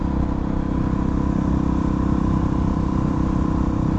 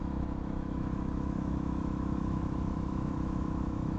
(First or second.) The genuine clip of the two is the first